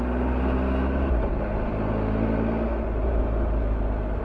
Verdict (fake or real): real